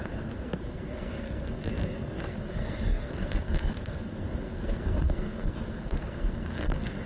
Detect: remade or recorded remade